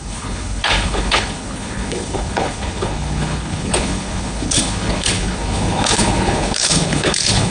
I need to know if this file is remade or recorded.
remade